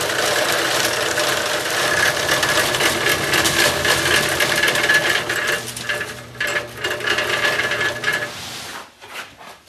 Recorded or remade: recorded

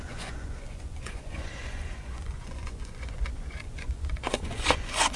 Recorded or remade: remade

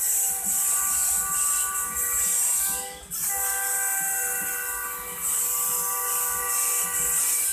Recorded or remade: recorded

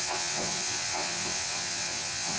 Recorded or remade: remade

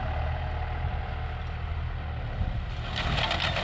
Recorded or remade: recorded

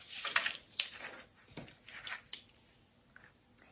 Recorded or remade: recorded